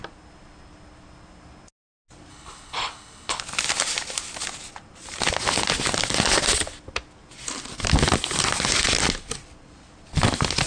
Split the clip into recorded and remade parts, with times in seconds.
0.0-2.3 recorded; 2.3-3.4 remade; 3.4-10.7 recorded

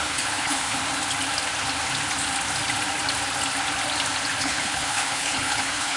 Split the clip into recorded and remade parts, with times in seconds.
0.0-0.8 remade; 0.8-4.4 recorded; 4.4-6.0 remade

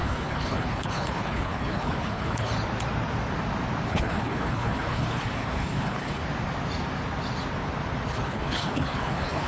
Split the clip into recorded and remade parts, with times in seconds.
0.0-2.5 remade; 2.5-3.9 recorded; 3.9-6.2 remade; 6.2-8.1 recorded; 8.1-9.5 remade